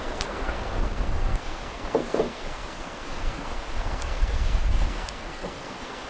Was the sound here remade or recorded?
remade